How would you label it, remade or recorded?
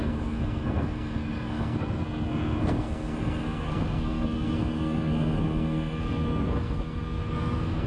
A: remade